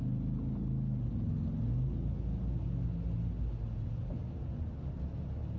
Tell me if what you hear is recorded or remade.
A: recorded